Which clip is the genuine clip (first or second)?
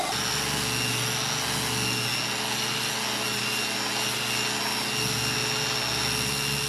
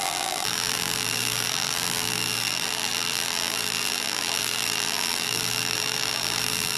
first